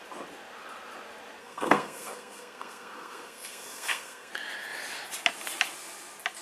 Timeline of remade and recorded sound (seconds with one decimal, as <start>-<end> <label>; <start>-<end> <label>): 0.0-1.4 recorded; 1.4-4.3 remade; 4.3-6.4 recorded